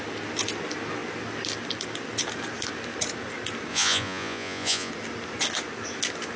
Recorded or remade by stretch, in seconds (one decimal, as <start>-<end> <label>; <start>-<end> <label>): 0.0-3.7 recorded; 3.7-4.9 remade; 4.9-6.4 recorded